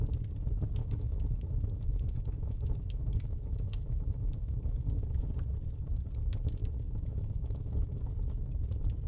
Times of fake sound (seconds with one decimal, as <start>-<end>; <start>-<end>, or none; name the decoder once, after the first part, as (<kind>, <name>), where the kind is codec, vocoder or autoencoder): 0.8-5.2 (autoencoder, DAC-VAE); 6.6-8.0